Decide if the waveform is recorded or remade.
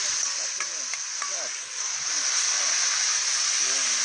recorded